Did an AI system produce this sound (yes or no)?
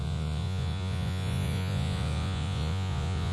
yes